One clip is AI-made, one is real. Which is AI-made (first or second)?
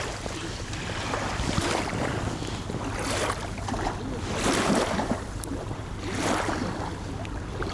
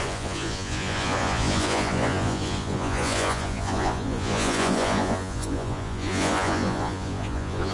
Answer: second